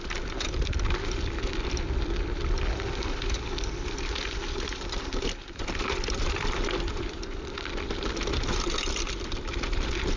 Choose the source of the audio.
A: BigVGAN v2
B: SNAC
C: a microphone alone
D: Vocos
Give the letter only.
A